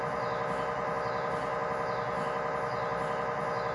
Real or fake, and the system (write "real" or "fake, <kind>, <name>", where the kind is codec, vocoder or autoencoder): real